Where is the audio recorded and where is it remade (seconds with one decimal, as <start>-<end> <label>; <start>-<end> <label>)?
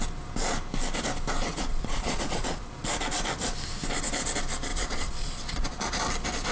0.0-1.5 recorded; 1.5-2.7 remade; 2.7-4.7 recorded; 4.7-6.0 remade; 6.0-6.5 recorded